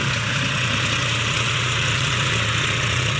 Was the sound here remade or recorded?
remade